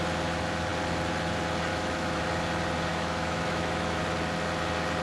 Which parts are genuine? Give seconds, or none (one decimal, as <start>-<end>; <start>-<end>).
0.0-1.7; 2.2-2.9; 4.0-5.0